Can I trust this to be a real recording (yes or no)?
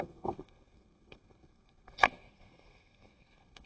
no